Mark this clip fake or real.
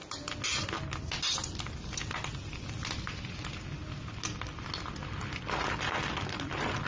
real